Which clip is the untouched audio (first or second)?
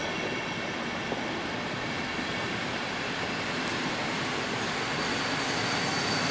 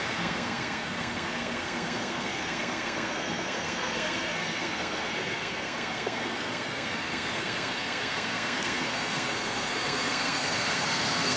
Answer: first